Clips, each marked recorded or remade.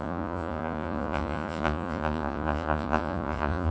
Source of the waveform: remade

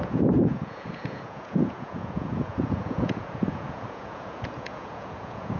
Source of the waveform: remade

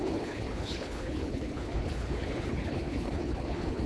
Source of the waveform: remade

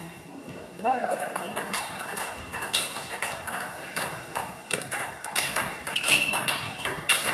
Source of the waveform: remade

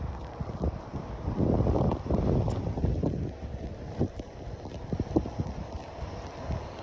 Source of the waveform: recorded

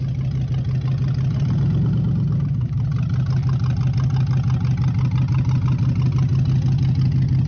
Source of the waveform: recorded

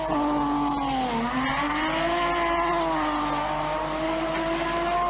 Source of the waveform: recorded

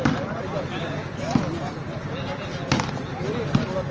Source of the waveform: recorded